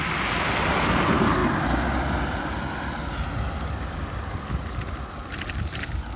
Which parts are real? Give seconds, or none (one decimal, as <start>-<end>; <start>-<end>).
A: 0.0-6.2